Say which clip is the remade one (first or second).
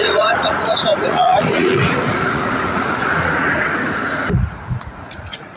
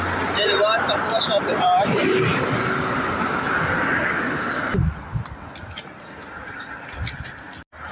first